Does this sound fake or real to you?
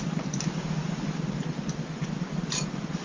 real